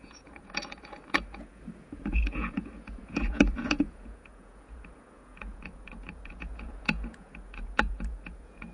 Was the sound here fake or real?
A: fake